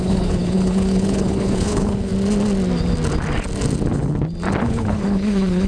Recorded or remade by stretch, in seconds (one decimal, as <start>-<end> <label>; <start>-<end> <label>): 0.0-2.1 remade; 2.1-4.6 recorded; 4.6-5.7 remade